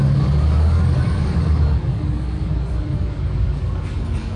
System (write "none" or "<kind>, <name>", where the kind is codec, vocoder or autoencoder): codec, DAC